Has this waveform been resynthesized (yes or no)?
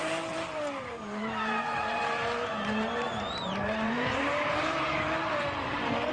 yes